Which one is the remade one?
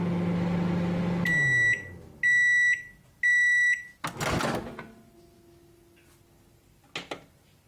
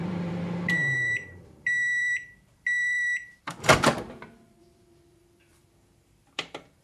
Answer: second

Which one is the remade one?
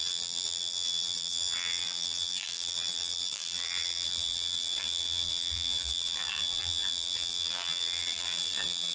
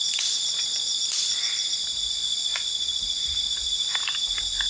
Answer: first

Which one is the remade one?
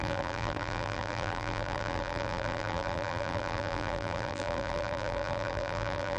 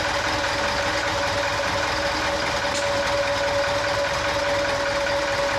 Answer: first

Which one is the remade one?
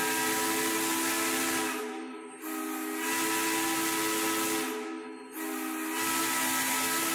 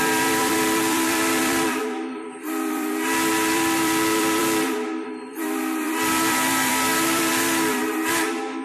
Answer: second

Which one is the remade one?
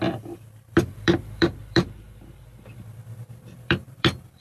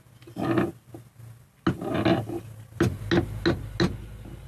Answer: first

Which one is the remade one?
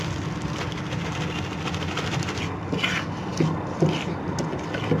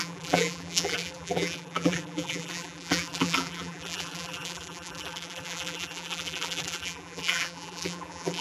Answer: second